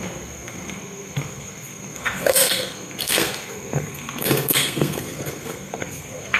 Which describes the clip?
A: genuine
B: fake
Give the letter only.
B